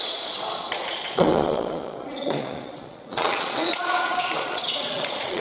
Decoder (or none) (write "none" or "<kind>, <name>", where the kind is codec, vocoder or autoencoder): vocoder, Vocos